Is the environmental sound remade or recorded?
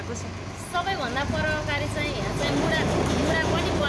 recorded